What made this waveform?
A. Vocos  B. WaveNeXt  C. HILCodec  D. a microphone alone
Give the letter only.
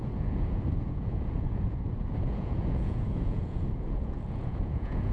A